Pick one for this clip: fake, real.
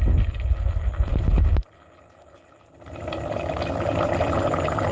real